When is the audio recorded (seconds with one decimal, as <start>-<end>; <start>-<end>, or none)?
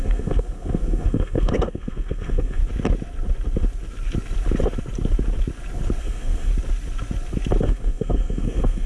2.6-6.0; 6.5-7.6